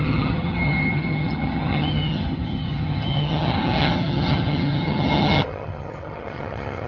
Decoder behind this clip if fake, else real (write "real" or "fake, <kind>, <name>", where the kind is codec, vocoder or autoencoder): fake, vocoder, HiFi-GAN